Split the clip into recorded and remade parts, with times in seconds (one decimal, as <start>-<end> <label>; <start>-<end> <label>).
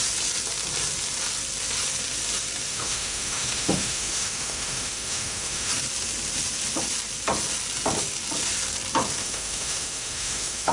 0.0-2.7 recorded; 2.7-5.7 remade; 5.7-9.2 recorded; 9.2-10.7 remade